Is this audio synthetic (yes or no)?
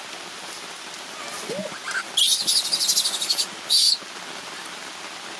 no